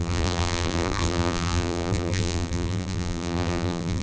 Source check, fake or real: fake